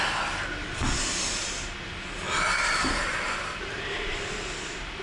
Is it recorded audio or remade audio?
recorded